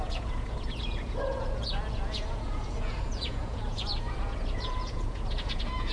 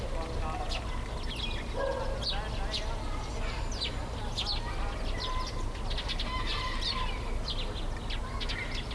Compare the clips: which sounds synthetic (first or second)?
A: first